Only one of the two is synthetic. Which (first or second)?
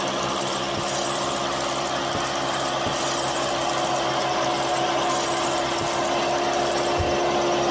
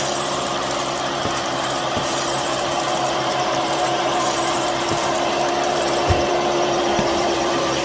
second